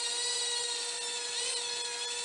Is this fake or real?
real